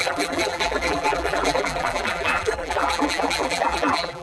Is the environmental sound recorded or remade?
remade